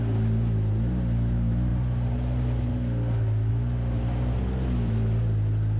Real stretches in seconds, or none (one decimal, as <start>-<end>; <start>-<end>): 0.0-5.8